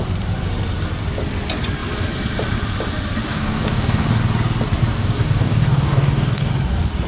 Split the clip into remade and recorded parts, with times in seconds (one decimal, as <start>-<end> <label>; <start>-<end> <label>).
0.0-3.2 recorded; 3.2-4.2 remade; 4.2-5.0 recorded; 5.0-6.5 remade; 6.5-7.1 recorded